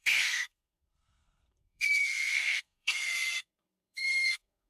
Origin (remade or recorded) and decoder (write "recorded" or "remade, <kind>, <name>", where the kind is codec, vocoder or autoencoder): remade, codec, SNAC